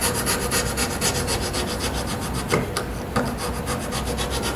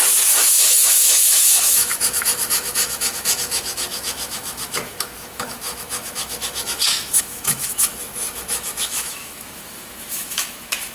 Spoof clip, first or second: second